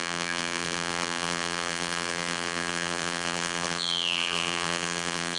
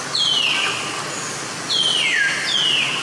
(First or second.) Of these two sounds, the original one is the second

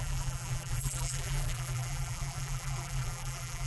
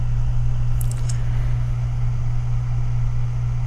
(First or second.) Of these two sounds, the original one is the second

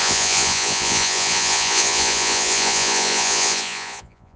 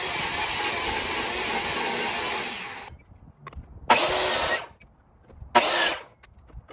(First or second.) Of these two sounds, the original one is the second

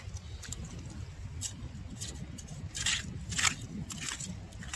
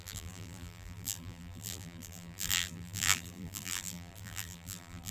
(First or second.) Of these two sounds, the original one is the first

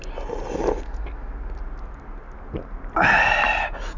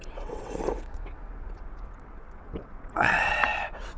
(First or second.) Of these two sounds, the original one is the first